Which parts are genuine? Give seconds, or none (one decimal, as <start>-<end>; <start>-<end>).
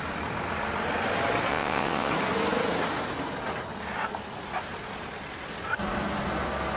0.0-1.5; 2.1-6.8